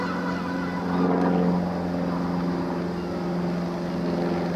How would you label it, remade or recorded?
recorded